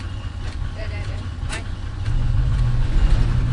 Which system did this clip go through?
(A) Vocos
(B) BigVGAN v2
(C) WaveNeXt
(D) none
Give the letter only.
A